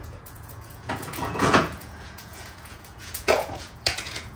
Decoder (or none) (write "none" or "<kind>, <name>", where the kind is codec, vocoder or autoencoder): vocoder, Vocos